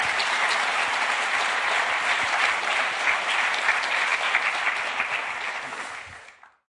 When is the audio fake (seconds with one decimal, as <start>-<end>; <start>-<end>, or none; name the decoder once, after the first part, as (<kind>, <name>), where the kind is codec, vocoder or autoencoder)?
0.0-4.1 (vocoder, BigVGAN v2)